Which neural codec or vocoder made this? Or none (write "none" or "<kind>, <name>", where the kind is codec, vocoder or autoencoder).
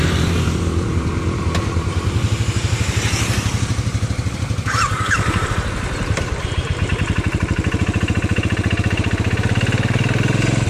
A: vocoder, BigVGAN v2